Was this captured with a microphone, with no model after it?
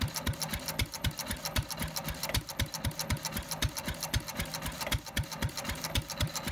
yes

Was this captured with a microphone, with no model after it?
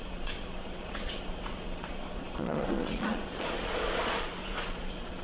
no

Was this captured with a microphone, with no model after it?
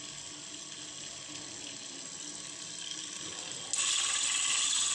yes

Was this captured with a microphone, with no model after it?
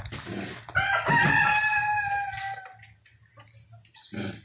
yes